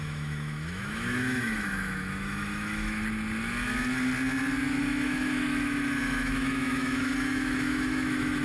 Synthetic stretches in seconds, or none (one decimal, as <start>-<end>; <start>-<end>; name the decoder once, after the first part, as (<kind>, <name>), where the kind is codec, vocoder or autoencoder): 0.0-3.0 (autoencoder, DAC-VAE); 4.8-8.4